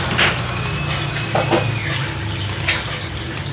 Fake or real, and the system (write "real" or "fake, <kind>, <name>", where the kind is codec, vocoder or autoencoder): real